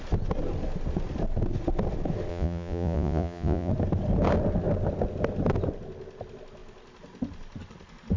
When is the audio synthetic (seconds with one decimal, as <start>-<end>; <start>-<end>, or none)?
2.3-3.7